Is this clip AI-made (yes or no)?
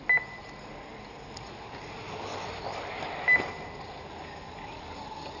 no